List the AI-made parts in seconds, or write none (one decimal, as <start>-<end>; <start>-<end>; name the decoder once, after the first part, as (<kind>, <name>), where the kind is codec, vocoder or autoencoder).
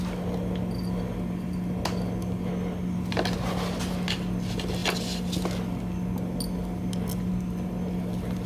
none